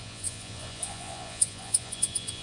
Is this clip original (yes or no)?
no